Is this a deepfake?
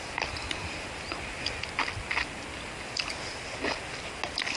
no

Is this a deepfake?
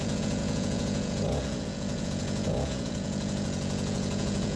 yes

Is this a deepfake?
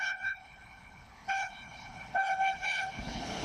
yes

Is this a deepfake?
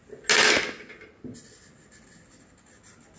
no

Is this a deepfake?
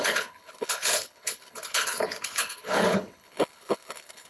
yes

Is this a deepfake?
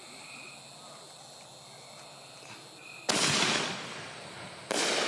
no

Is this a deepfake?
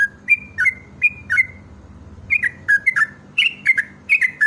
yes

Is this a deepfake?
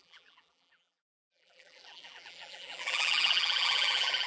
yes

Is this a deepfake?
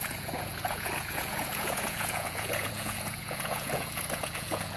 yes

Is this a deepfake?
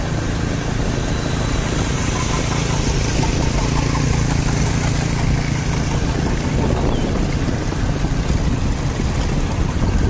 no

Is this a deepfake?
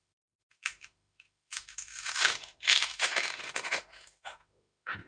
yes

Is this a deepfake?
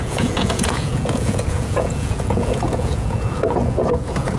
yes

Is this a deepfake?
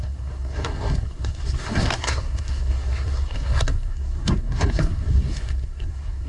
yes